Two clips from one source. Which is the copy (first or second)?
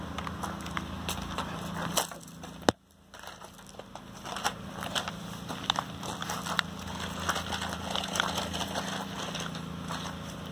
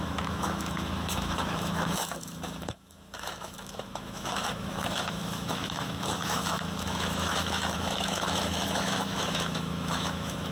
second